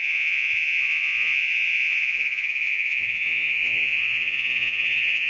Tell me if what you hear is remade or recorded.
remade